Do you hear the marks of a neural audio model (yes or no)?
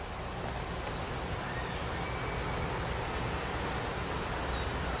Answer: no